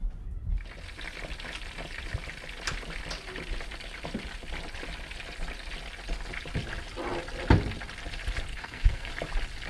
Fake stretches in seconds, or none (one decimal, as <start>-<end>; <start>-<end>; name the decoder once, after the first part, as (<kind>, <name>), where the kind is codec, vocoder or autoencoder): 8.5-9.1 (codec, SNAC)